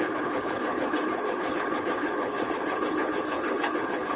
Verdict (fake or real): fake